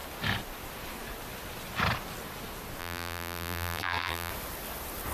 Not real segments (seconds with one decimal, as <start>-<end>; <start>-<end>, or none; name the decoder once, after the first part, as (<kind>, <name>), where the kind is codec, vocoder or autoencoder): 2.8-4.3 (vocoder, BigVGAN v2)